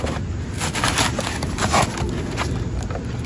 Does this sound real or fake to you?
real